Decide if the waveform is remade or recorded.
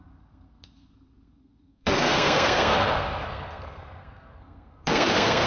remade